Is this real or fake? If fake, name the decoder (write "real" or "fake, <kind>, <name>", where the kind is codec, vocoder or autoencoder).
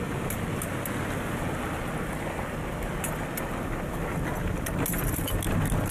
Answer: real